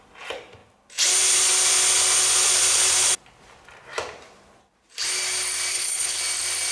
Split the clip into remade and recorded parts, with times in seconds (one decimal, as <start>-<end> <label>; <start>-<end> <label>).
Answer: 0.0-5.7 recorded; 5.7-6.2 remade; 6.2-6.7 recorded